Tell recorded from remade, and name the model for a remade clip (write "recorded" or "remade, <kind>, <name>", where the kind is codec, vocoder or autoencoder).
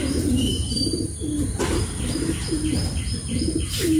remade, vocoder, BigVGAN v2